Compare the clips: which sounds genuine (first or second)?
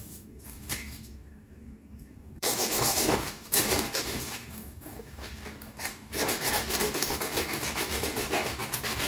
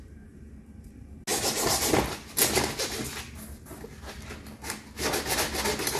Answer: second